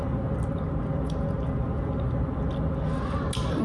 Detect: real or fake real